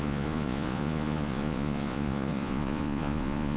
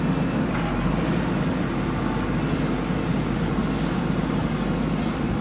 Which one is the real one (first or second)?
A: second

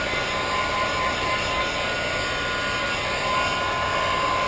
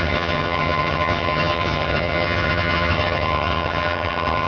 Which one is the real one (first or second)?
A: first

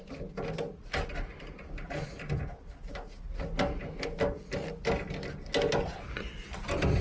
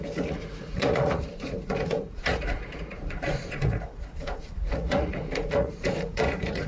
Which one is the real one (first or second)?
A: first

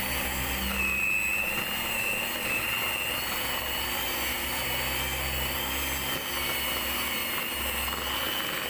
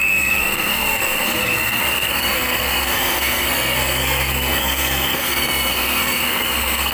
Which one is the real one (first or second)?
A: first